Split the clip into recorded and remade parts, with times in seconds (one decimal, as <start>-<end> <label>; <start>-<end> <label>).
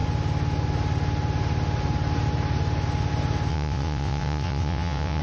0.0-3.5 recorded; 3.5-5.2 remade